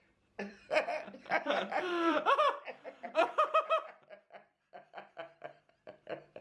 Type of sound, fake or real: fake